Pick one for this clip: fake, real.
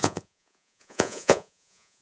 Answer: fake